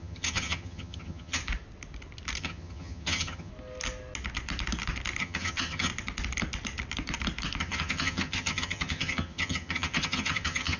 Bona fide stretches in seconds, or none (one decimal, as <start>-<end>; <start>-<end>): 1.4-2.4; 3.5-5.2; 5.9-7.6